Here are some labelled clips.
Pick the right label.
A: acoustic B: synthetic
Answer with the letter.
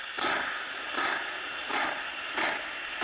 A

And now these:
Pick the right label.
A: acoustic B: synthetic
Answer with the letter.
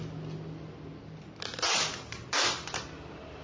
A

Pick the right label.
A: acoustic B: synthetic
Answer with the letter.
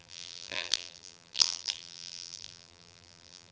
B